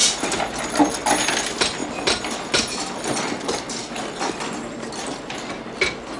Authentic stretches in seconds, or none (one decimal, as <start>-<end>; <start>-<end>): 0.0-6.2